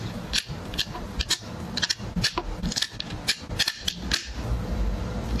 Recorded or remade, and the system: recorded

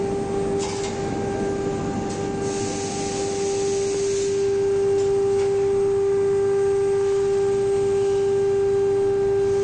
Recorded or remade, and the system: recorded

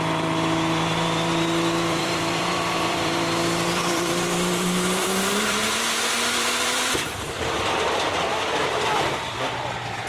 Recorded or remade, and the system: remade, vocoder, BigVGAN v2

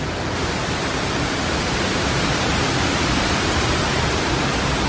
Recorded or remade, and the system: recorded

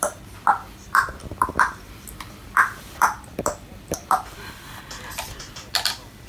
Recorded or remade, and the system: remade, vocoder, BigVGAN v2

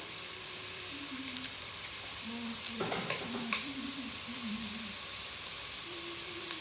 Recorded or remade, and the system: remade, vocoder, BigVGAN v2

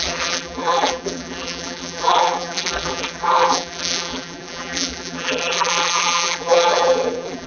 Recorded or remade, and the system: remade, vocoder, BigVGAN v2